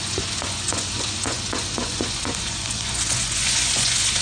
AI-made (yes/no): yes